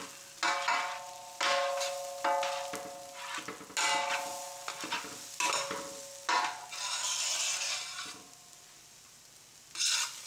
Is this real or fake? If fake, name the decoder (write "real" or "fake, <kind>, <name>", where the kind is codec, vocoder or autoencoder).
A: real